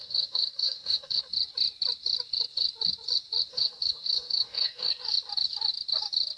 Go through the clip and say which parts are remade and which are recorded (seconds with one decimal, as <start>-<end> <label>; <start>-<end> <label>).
0.0-1.2 remade; 1.2-3.5 recorded; 3.5-4.9 remade; 4.9-6.4 recorded

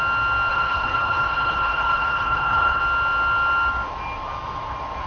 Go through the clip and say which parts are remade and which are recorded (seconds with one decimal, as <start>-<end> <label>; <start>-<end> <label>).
0.0-0.5 recorded; 0.5-2.8 remade; 2.8-5.1 recorded

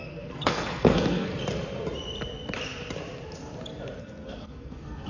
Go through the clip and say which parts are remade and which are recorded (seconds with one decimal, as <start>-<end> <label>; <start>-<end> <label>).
0.0-1.3 remade; 1.3-4.0 recorded; 4.0-5.1 remade

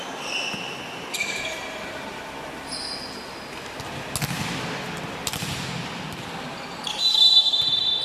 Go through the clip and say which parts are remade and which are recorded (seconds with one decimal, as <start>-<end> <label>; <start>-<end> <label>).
0.0-7.1 recorded; 7.1-7.6 remade; 7.6-8.0 recorded